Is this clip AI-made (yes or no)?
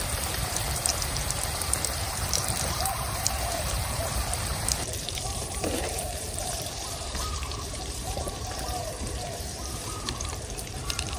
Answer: yes